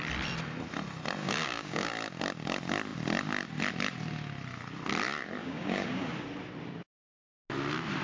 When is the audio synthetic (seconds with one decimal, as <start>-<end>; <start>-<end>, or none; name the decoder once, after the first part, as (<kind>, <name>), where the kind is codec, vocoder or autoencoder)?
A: 1.2-1.9 (codec, DAC); 5.4-6.1

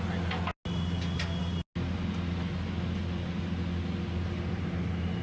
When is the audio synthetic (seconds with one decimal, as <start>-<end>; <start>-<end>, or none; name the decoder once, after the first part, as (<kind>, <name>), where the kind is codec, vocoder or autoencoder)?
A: none

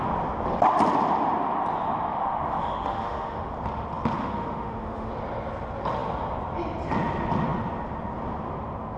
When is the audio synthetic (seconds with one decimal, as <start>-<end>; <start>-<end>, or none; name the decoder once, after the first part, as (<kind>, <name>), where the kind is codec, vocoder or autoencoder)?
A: 2.1-3.5 (autoencoder, DAC-VAE); 4.2-5.1

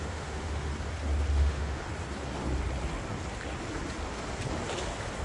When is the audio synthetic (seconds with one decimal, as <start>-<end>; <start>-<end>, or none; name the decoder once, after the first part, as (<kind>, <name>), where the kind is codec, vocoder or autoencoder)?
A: 0.0-0.7 (autoencoder, DAC-VAE); 1.3-1.8